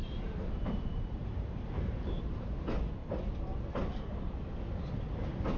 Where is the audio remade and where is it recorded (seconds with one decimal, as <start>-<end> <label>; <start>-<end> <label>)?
0.0-2.6 remade; 2.6-5.6 recorded